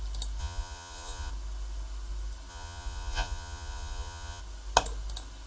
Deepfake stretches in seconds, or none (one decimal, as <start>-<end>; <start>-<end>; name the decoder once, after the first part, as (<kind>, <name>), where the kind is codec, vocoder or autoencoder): 0.4-1.3 (vocoder, Vocos); 2.5-4.4